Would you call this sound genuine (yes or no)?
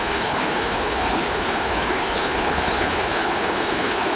no